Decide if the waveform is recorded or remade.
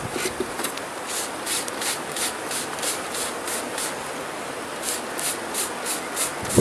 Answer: recorded